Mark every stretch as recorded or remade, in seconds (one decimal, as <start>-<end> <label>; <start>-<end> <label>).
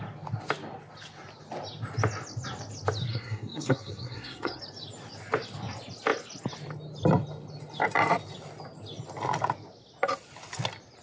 0.0-3.1 recorded; 3.1-4.6 remade; 4.6-11.0 recorded